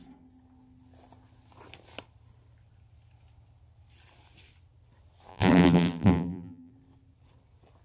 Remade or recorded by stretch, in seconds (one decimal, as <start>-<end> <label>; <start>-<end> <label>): 0.0-5.3 recorded; 5.3-6.7 remade; 6.7-7.8 recorded